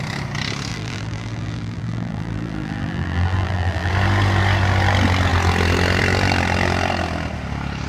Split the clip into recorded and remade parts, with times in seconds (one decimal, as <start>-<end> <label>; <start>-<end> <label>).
0.0-0.7 recorded; 0.7-3.9 remade; 3.9-7.9 recorded